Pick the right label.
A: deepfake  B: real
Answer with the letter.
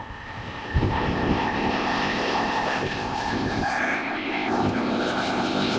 A